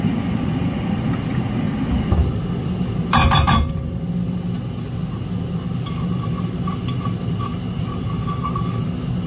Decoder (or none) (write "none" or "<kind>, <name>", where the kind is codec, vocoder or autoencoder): none